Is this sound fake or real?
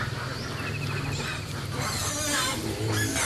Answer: real